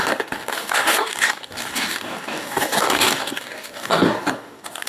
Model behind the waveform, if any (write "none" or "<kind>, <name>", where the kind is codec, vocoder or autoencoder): codec, DAC